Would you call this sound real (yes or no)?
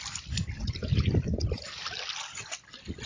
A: no